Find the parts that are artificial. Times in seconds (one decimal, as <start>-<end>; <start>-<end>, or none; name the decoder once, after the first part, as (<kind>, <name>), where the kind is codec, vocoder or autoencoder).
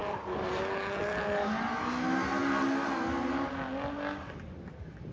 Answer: none